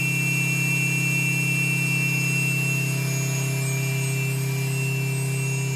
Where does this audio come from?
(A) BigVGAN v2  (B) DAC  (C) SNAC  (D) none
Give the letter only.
D